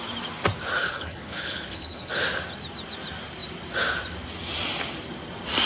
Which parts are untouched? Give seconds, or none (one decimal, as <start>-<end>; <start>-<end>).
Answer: 0.0-0.8; 2.1-5.7